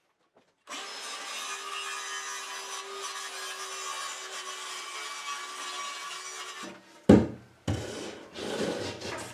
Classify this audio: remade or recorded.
recorded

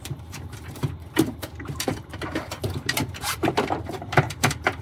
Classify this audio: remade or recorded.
remade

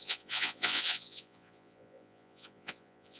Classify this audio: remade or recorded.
remade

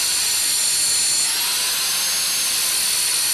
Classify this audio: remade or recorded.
recorded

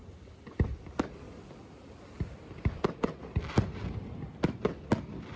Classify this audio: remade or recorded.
remade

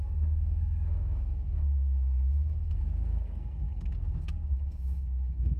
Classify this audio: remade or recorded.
remade